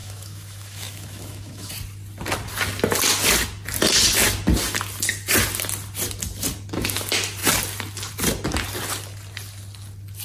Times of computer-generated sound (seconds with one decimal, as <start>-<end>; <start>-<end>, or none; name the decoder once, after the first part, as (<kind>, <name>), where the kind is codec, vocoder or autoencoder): 0.0-1.7 (autoencoder, DAC-VAE)